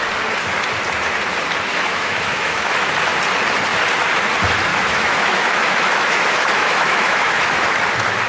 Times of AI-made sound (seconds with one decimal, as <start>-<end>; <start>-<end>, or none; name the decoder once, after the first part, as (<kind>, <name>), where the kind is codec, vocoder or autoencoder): 1.7-2.9 (autoencoder, DAC-VAE); 4.7-7.8